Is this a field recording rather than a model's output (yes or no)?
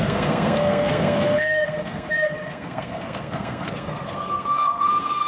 no